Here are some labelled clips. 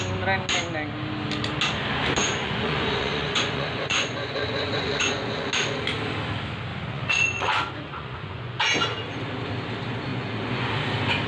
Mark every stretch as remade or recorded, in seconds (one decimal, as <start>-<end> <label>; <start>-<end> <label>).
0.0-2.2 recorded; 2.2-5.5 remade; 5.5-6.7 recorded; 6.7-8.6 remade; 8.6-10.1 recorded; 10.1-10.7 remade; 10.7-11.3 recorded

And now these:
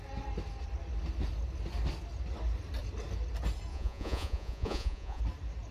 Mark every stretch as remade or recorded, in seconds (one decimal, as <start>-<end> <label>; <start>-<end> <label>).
0.0-3.7 recorded; 3.7-5.2 remade; 5.2-5.7 recorded

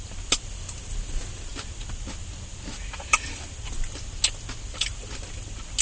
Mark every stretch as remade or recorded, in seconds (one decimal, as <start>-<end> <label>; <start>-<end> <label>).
0.0-5.8 recorded

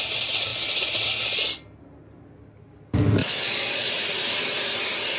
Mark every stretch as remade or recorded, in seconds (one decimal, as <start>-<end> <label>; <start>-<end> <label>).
0.0-3.2 recorded; 3.2-3.9 remade; 3.9-5.2 recorded

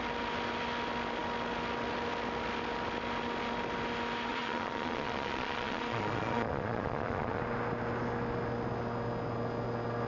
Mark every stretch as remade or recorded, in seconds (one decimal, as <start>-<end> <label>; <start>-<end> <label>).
0.0-4.3 recorded; 4.3-7.4 remade; 7.4-10.1 recorded

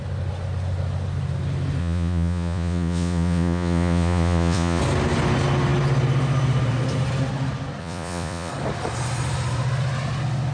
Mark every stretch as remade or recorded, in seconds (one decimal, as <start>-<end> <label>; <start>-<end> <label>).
0.0-1.8 recorded; 1.8-4.8 remade; 4.8-7.8 recorded; 7.8-8.5 remade; 8.5-10.5 recorded

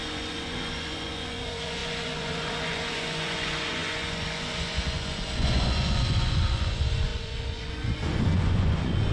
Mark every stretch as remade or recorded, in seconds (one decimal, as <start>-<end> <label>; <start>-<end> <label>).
0.0-9.1 remade

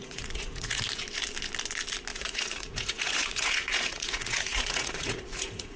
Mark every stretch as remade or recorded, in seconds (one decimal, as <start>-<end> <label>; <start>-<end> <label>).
0.0-0.8 remade; 0.8-2.1 recorded; 2.1-5.8 remade